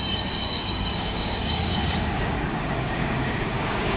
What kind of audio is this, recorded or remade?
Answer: remade